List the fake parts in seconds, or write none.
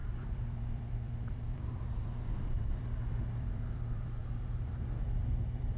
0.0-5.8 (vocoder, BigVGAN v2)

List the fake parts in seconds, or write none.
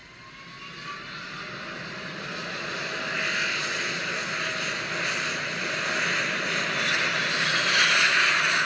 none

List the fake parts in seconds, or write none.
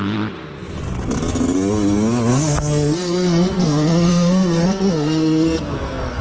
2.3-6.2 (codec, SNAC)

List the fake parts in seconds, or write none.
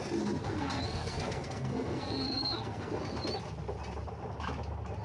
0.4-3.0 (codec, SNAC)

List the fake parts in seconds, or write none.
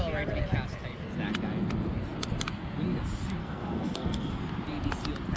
3.4-4.4 (codec, SNAC)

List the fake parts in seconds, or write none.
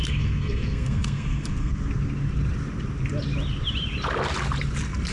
0.0-1.7 (codec, SNAC)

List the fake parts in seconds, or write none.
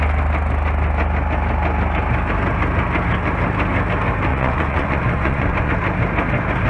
4.3-5.7 (vocoder, Vocos)